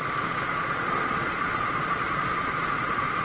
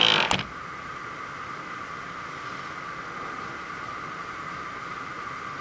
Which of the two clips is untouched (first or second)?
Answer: second